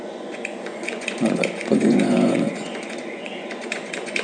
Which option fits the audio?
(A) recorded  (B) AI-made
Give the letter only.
B